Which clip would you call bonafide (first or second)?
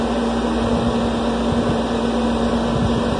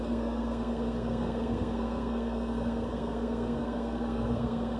first